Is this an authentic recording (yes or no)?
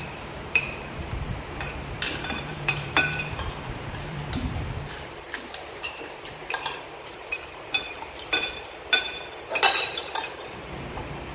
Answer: no